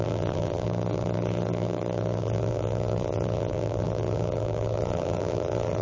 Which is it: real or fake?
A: fake